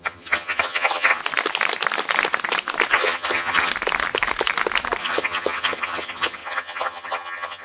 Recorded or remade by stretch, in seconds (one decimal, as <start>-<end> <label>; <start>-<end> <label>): 0.0-1.2 remade; 1.2-2.9 recorded; 2.9-3.7 remade; 3.7-5.0 recorded; 5.0-7.6 remade